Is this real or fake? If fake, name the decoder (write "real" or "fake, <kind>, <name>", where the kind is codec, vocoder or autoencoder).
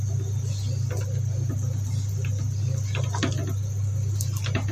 real